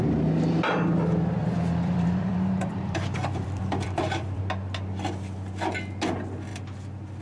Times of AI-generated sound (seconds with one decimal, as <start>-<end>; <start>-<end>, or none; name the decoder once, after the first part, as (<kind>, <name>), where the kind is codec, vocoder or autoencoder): 1.4-4.4 (vocoder, BigVGAN v2); 6.5-7.2